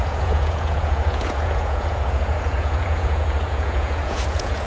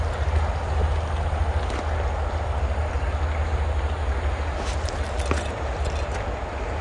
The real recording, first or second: second